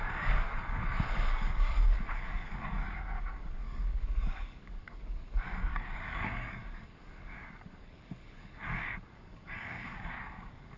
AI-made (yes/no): yes